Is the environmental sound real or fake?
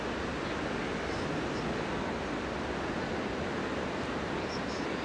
real